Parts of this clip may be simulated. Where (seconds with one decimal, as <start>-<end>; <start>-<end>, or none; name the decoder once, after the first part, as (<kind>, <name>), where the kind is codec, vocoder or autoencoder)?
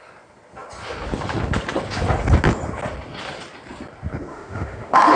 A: 4.3-5.2 (autoencoder, DAC-VAE)